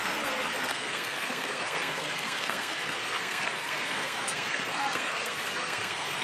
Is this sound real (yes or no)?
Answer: no